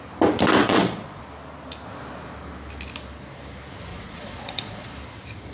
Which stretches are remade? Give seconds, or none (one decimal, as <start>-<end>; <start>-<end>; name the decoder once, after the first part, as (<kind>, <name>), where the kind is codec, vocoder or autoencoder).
0.6-1.2 (vocoder, Vocos); 3.9-4.9